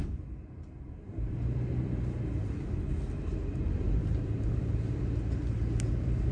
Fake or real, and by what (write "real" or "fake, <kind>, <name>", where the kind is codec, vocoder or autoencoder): fake, vocoder, BigVGAN v2